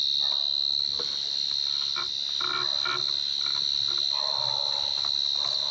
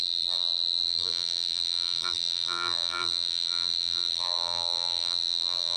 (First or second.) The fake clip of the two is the second